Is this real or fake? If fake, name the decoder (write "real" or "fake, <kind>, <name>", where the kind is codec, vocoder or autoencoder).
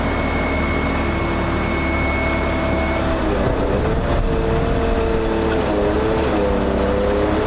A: real